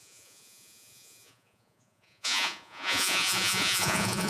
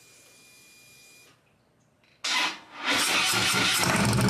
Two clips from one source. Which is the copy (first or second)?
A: first